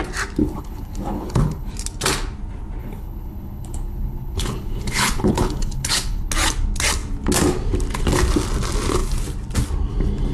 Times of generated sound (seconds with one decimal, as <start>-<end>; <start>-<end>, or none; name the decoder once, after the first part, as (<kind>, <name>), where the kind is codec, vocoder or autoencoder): 0.4-1.7 (codec, HILCodec); 2.8-6.3